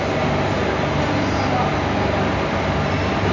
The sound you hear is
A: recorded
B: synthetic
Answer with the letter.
A